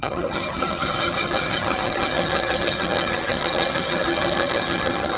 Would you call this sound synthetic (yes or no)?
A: yes